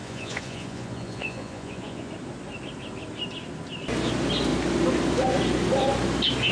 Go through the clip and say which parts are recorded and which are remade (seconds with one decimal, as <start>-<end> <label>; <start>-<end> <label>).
0.0-2.1 remade; 2.1-6.5 recorded